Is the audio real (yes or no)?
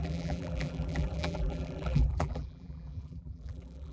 no